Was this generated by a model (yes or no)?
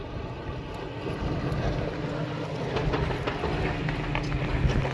no